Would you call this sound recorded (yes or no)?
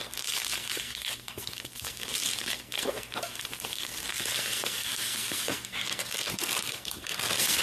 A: no